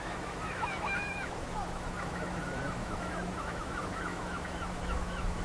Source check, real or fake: fake